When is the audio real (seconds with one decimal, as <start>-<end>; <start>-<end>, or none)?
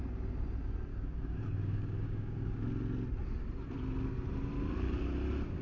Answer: 0.0-0.9; 2.5-5.6